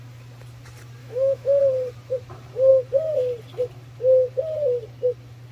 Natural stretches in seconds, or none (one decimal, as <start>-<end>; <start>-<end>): 0.0-1.0; 1.6-5.5